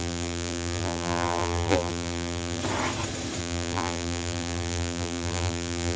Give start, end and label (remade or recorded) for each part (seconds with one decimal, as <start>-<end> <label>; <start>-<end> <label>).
0.0-2.6 remade; 2.6-3.4 recorded; 3.4-6.0 remade